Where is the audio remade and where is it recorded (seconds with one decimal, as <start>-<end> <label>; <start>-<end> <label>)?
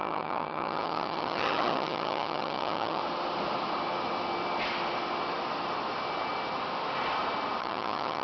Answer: 0.0-3.0 remade; 3.0-7.6 recorded; 7.6-8.2 remade